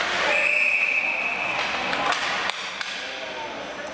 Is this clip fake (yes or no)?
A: no